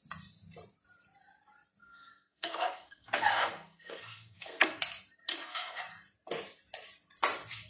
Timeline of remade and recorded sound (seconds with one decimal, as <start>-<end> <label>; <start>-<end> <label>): 0.0-1.8 recorded; 1.8-4.8 remade; 4.8-5.3 recorded; 5.3-5.8 remade; 5.8-7.7 recorded